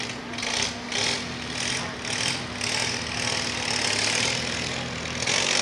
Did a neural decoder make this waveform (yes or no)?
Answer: no